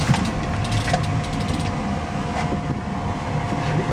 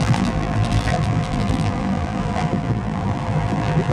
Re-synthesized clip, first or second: second